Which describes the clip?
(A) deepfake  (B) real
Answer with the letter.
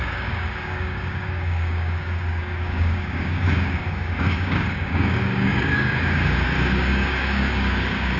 A